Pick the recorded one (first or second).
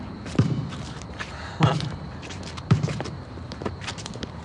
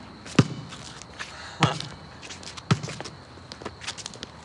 second